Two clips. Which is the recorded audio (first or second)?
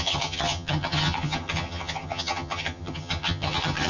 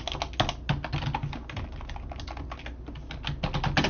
second